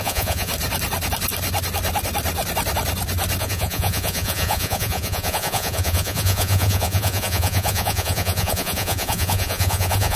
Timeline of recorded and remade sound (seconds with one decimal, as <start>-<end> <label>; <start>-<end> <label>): 0.0-0.5 remade; 0.5-3.4 recorded; 3.4-10.2 remade